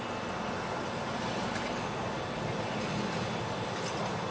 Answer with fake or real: real